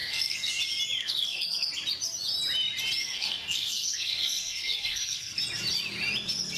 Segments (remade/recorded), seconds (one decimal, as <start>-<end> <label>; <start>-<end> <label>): 0.0-0.5 remade; 0.5-1.0 recorded; 1.0-1.7 remade; 1.7-3.0 recorded; 3.0-5.4 remade; 5.4-6.6 recorded